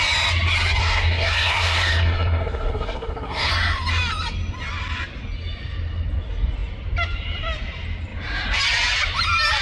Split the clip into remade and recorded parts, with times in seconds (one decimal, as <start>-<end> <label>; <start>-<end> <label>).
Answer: 0.0-0.8 recorded; 0.8-3.5 remade; 3.5-9.6 recorded